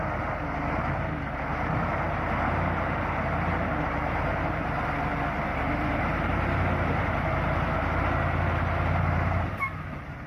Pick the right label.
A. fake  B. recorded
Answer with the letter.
B